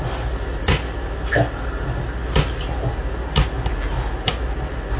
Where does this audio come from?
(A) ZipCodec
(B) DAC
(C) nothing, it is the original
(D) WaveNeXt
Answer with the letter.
C